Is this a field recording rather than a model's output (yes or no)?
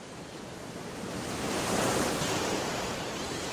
no